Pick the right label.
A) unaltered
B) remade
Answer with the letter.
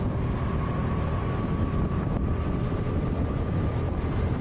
B